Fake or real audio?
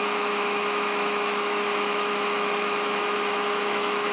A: fake